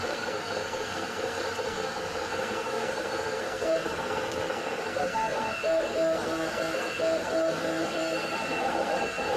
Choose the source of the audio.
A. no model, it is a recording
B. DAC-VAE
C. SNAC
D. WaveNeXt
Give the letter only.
C